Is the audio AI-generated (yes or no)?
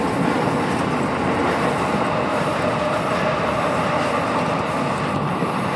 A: no